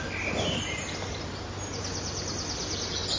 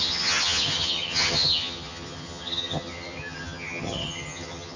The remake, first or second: second